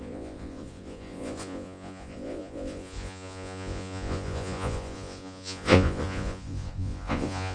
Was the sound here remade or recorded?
remade